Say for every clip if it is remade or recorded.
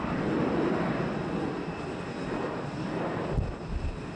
recorded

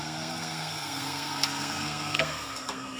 remade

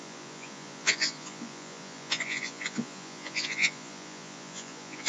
remade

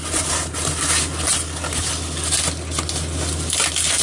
recorded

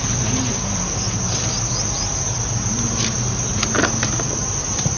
remade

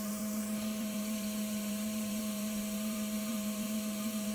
remade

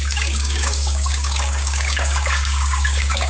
remade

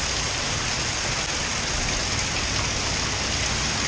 recorded